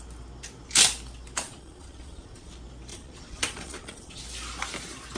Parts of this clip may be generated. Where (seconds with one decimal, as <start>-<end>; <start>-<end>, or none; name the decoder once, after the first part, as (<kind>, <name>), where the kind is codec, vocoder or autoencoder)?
1.4-2.5 (vocoder, Vocos); 2.9-4.2

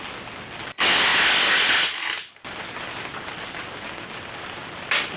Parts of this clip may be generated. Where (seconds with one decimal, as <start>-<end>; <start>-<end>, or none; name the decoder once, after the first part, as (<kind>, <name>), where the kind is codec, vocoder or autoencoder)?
none

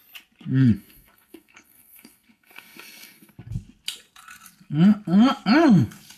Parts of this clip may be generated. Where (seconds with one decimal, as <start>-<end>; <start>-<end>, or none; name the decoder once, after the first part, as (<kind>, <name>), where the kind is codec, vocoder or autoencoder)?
0.5-3.3 (codec, SNAC)

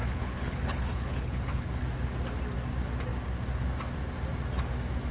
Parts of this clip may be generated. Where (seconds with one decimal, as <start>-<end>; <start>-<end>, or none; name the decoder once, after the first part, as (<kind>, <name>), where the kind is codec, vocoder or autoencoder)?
0.0-1.8 (codec, HILCodec)

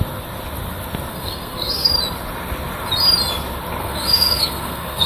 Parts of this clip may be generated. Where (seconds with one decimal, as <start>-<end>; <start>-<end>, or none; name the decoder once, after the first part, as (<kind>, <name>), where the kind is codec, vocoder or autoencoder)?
1.1-1.9 (codec, SNAC); 3.8-5.1

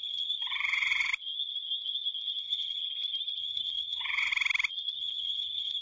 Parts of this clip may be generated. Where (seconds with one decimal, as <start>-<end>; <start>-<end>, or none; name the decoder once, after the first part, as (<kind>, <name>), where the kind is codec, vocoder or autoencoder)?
0.0-1.1 (vocoder, HiFi-GAN); 2.4-2.8; 3.4-4.3; 5.0-5.8

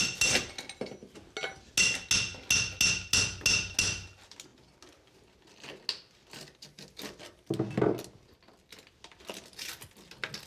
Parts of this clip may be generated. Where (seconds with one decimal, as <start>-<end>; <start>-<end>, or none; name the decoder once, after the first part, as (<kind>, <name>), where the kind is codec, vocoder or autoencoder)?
none

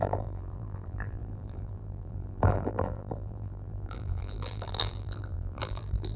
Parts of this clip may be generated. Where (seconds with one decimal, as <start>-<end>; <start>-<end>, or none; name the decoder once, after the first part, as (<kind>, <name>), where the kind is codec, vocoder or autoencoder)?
0.0-6.2 (vocoder, BigVGAN v2)